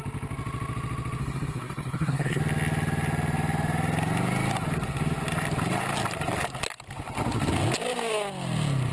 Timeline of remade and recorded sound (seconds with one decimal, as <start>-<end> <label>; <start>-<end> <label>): 0.0-1.2 recorded; 1.2-2.4 remade; 2.4-8.9 recorded